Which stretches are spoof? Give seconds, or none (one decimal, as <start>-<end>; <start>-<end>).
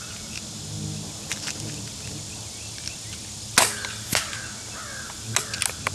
none